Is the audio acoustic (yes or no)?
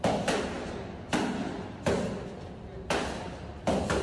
yes